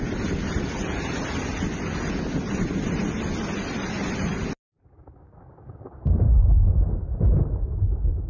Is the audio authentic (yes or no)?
yes